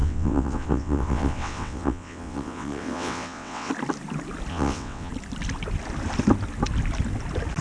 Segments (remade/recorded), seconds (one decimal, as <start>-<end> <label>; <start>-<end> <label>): 0.0-3.7 remade; 3.7-4.5 recorded; 4.5-5.1 remade; 5.1-7.6 recorded